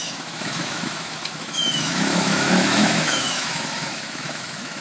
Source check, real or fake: fake